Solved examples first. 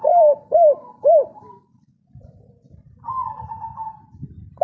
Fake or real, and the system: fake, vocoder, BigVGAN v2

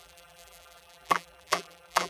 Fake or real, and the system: fake, vocoder, BigVGAN v2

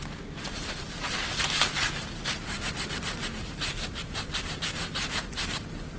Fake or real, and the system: fake, vocoder, BigVGAN v2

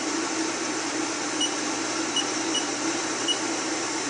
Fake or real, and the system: fake, vocoder, BigVGAN v2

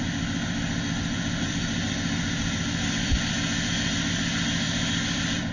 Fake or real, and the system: fake, vocoder, BigVGAN v2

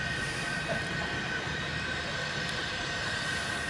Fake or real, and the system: fake, vocoder, BigVGAN v2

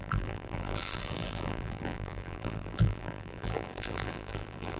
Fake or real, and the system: fake, vocoder, BigVGAN v2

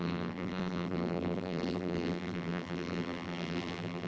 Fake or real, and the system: fake, vocoder, BigVGAN v2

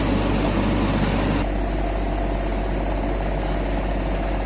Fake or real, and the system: real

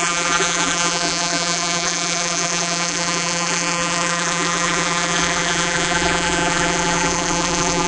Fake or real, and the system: fake, vocoder, BigVGAN v2